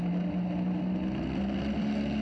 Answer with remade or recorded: recorded